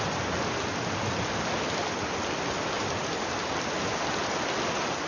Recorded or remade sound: recorded